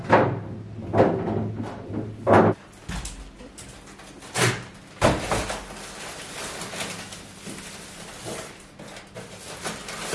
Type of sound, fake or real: real